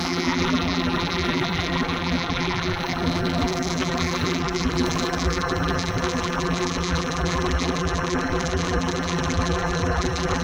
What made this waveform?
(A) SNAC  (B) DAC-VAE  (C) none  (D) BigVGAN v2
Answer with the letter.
D